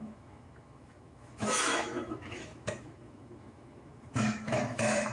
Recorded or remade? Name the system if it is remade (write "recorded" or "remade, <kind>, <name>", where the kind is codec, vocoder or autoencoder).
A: remade, autoencoder, DAC-VAE